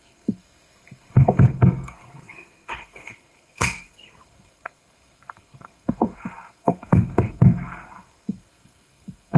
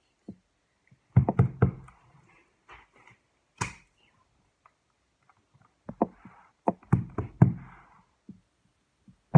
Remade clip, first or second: first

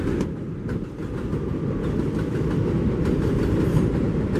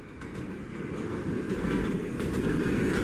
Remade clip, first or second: second